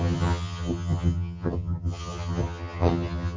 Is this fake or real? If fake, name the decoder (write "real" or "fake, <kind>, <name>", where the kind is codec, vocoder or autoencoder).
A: fake, vocoder, HiFi-GAN